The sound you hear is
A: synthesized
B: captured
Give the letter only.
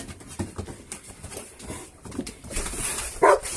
A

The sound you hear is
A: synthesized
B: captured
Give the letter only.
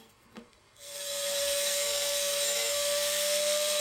A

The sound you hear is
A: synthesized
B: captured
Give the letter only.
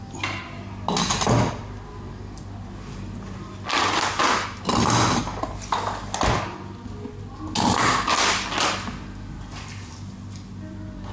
B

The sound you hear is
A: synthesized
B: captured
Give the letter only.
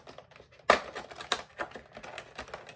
B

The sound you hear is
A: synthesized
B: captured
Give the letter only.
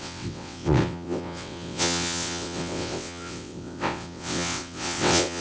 A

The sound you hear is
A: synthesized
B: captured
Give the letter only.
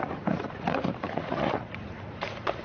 A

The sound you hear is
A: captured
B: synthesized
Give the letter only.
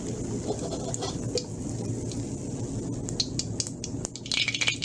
A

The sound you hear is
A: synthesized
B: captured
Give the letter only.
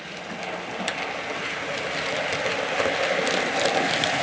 B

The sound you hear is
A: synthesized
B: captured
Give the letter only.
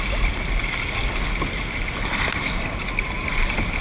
B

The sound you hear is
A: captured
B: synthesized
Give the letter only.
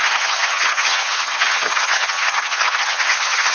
B